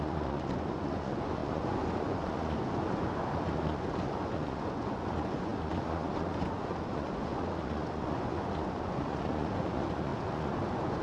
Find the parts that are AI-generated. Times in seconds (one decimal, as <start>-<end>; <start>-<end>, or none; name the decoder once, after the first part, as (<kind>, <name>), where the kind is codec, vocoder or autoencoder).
0.0-11.0 (vocoder, Vocos)